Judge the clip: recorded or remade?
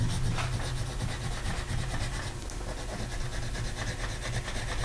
recorded